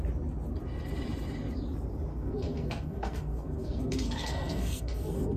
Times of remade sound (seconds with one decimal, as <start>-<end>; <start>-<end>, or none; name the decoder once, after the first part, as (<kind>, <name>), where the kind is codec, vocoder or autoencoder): 2.1-5.4 (codec, SNAC)